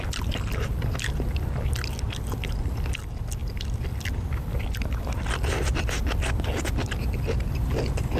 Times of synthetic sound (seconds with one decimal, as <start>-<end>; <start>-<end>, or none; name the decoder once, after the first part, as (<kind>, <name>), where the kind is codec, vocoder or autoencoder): none